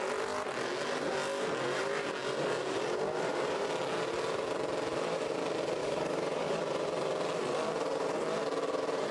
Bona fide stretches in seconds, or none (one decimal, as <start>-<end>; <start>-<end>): 0.0-5.8; 6.6-9.1